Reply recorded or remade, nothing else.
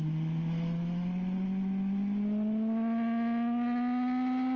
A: recorded